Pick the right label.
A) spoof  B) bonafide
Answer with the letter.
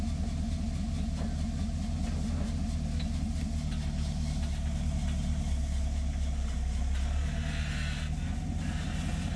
B